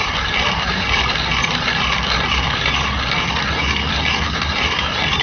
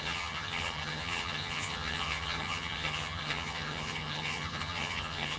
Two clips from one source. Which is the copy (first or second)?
second